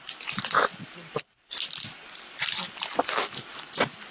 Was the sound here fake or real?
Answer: real